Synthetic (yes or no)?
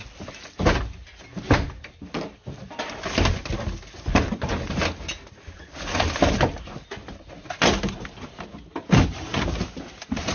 no